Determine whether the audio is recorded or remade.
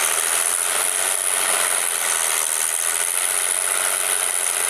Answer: recorded